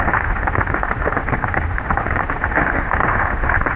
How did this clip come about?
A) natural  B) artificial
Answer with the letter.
B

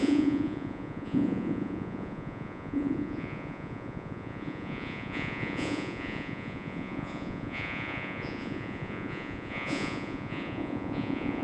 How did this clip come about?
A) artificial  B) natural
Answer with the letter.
A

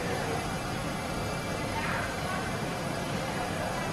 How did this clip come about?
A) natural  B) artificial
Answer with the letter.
B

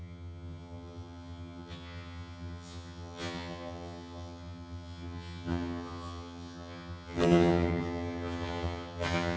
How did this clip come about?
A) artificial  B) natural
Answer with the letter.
A